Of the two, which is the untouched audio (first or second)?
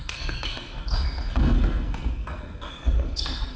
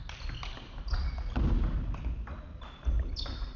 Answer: second